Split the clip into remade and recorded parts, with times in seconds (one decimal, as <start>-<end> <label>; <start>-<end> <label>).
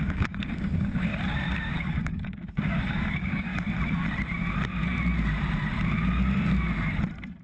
0.0-1.1 remade; 1.1-1.8 recorded; 1.8-3.5 remade; 3.5-7.4 recorded